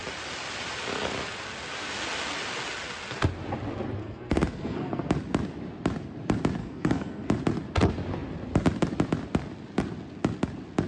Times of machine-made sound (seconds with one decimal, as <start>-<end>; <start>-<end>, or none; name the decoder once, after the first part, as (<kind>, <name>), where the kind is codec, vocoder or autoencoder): 4.0-5.1 (codec, SNAC); 6.6-7.3